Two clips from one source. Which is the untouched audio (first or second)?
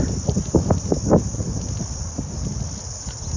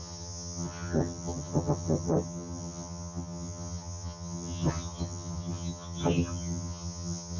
first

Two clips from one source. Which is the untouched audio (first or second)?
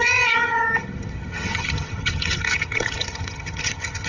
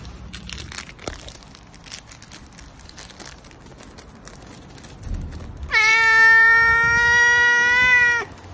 second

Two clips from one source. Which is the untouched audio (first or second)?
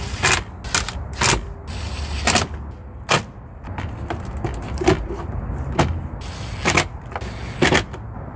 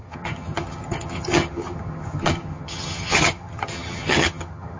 first